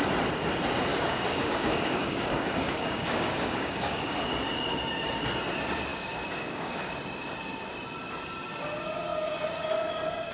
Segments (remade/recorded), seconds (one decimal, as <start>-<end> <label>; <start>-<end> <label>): 0.0-0.9 recorded; 0.9-4.3 remade; 4.3-5.9 recorded; 5.9-6.9 remade; 6.9-10.3 recorded